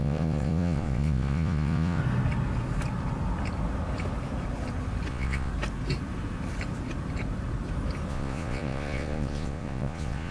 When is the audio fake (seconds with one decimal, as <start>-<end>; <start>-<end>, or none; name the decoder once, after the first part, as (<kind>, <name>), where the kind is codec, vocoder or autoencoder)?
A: 0.0-2.0 (vocoder, Vocos); 5.1-5.5; 8.1-10.3